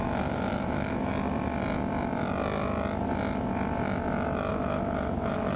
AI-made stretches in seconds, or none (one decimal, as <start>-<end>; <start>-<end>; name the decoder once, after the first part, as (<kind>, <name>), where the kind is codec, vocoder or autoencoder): 0.0-1.1 (autoencoder, DAC-VAE); 4.5-5.6